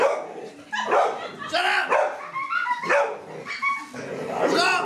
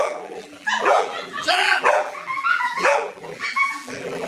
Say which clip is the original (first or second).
first